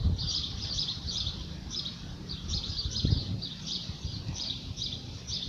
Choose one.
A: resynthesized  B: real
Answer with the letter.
A